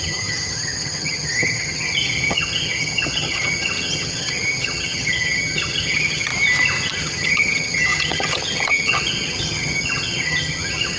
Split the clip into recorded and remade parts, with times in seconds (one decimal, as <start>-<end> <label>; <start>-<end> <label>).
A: 0.0-6.3 remade; 6.3-7.0 recorded; 7.0-11.0 remade